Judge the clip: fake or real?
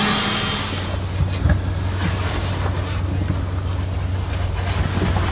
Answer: real